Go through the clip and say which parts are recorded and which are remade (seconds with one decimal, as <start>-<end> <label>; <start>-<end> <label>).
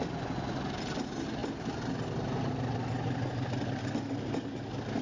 0.0-5.0 recorded